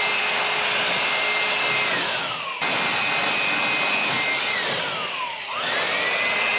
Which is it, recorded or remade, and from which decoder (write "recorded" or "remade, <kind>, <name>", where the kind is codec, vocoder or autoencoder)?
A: recorded